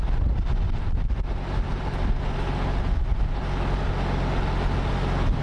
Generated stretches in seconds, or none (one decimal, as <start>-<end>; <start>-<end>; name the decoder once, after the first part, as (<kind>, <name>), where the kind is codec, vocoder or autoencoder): none